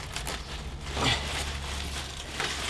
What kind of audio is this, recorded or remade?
recorded